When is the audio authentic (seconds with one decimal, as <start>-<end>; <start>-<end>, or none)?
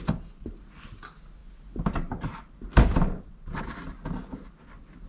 0.0-5.1